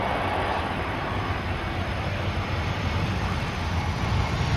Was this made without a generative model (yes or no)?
yes